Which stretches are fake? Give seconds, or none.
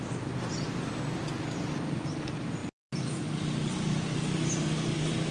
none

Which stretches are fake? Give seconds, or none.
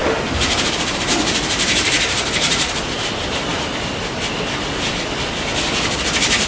0.0-3.9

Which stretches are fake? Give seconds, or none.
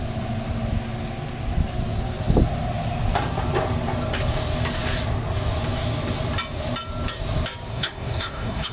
7.7-8.7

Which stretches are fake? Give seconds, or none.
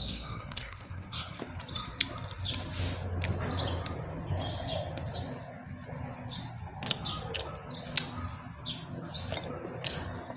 0.0-1.4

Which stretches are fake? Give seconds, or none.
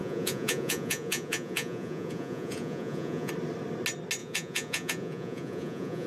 0.0-3.3; 4.2-6.1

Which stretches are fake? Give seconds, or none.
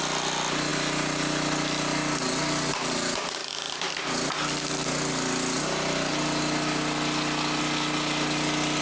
none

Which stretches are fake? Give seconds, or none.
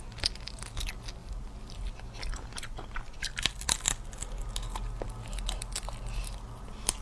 none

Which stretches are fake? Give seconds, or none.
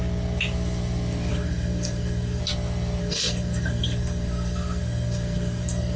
1.3-2.4; 3.0-6.0